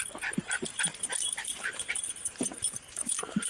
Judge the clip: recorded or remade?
remade